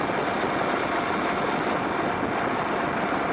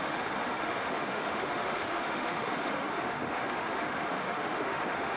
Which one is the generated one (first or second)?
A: second